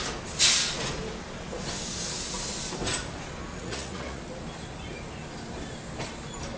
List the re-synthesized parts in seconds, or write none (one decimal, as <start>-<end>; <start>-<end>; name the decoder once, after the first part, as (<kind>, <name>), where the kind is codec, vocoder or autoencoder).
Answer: 3.5-4.2 (vocoder, Vocos)

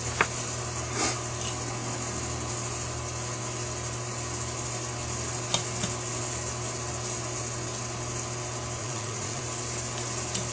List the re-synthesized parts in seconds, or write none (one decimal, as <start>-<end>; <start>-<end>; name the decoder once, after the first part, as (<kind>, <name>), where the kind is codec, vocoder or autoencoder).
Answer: 8.8-9.4 (vocoder, Vocos)